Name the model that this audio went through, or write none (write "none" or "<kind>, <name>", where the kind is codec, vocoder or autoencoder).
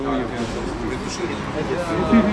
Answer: none